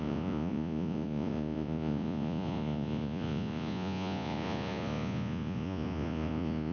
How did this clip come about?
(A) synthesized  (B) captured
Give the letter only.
A